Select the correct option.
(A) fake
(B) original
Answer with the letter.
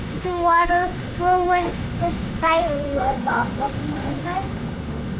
A